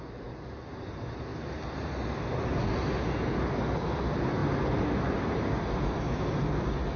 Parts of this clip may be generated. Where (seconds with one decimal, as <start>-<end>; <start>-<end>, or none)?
none